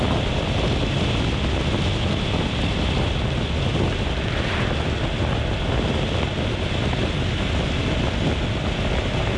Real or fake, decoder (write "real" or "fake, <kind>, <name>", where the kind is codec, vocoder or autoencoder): real